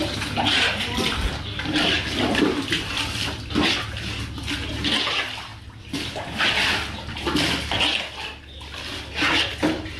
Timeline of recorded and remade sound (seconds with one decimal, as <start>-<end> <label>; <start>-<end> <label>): 0.0-10.0 recorded